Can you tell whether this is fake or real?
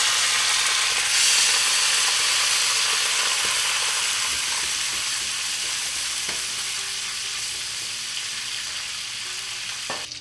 real